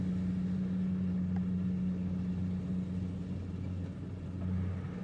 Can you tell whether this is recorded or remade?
recorded